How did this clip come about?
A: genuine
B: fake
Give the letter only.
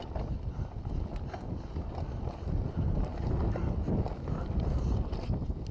A